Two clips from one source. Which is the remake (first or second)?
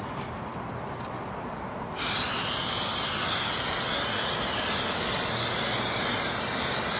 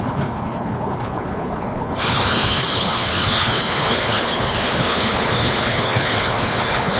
second